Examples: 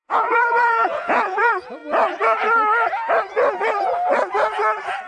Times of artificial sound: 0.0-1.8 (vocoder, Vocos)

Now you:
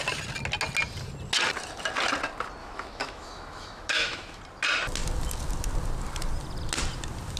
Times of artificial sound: 2.6-4.4 (autoencoder, DAC-VAE)

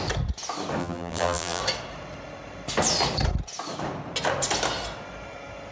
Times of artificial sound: 0.8-1.6 (vocoder, BigVGAN v2)